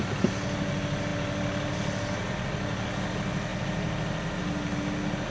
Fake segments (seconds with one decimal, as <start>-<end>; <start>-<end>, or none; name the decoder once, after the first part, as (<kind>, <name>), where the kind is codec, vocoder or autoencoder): none